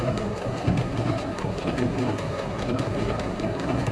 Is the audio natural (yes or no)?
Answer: no